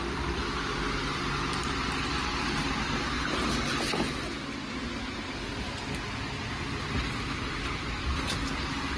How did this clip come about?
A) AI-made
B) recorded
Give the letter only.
B